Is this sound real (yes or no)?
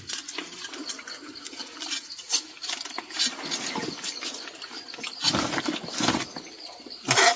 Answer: yes